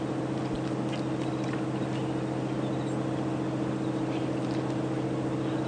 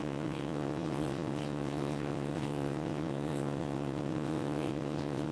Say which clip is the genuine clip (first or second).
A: first